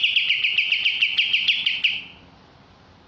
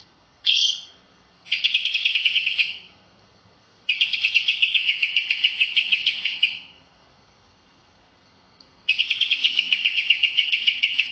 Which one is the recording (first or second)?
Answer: first